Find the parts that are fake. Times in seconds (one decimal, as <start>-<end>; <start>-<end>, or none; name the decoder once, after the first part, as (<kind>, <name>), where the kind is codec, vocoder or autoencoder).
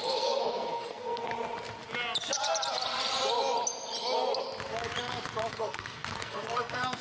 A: 0.0-1.3 (codec, SNAC); 5.5-7.0